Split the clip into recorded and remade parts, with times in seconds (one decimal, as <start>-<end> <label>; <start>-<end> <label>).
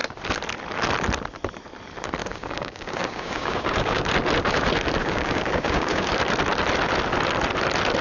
0.0-2.2 recorded; 2.2-4.1 remade; 4.1-5.0 recorded; 5.0-6.1 remade; 6.1-8.0 recorded